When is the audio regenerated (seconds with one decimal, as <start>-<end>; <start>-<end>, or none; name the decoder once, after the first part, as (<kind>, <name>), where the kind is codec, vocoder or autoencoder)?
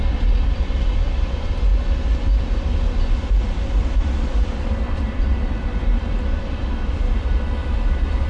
0.0-1.7 (vocoder, BigVGAN v2); 4.0-8.3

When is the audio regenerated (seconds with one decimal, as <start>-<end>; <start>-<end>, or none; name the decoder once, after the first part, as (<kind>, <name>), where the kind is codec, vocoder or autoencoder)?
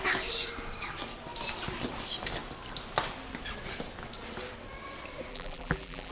5.3-6.1 (vocoder, BigVGAN v2)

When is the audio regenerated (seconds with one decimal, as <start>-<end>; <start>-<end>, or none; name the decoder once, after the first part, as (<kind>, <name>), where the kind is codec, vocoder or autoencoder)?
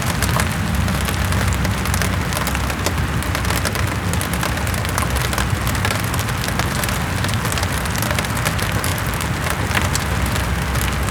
none